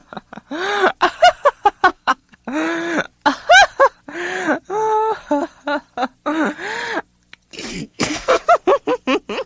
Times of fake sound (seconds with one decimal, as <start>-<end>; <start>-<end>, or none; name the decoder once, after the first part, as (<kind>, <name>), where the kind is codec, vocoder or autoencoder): 1.9-2.4 (codec, SNAC); 7.7-8.4